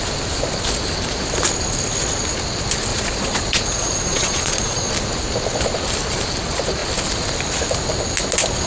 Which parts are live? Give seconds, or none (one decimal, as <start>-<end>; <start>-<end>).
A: 0.0-2.9; 4.9-8.7